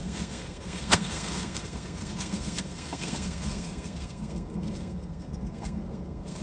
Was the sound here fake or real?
fake